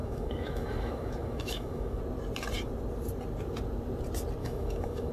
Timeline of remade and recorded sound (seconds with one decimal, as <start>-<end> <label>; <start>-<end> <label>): 0.0-2.0 remade; 2.0-4.4 recorded; 4.4-5.1 remade